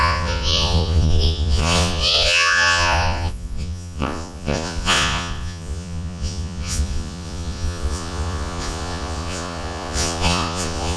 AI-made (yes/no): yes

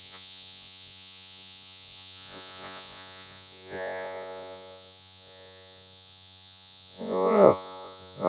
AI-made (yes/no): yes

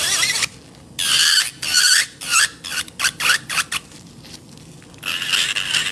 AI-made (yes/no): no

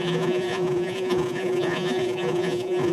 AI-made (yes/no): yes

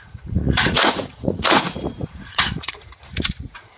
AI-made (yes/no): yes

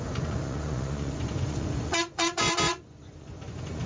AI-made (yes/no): yes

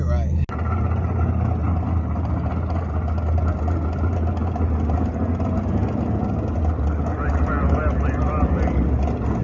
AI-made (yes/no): no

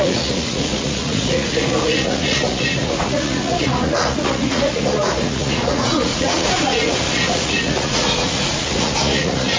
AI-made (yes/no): yes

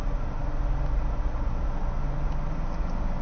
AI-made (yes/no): no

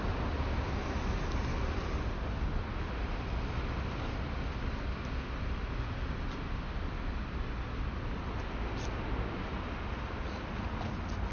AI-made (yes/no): no